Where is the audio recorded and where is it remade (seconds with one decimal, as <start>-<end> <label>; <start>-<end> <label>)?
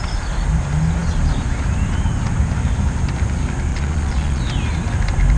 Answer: 0.0-3.7 recorded; 3.7-4.4 remade; 4.4-5.4 recorded